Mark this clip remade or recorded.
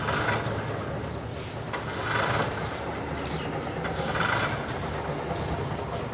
recorded